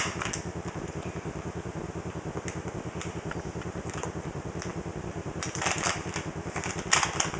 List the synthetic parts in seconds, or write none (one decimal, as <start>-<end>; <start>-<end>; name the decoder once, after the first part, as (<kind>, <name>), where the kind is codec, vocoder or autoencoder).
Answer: none